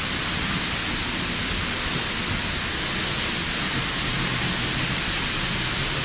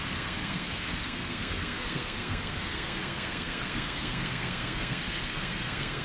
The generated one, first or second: second